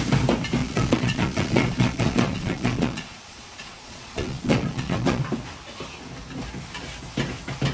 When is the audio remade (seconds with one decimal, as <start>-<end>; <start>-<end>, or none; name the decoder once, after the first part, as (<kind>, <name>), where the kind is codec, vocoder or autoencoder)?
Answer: 0.6-5.2 (vocoder, Vocos)